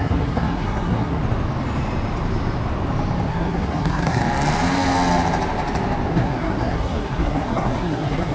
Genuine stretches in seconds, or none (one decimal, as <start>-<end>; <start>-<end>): 1.2-3.3; 4.2-6.1